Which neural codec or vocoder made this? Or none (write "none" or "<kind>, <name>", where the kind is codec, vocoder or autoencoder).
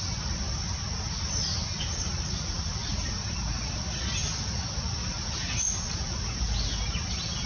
none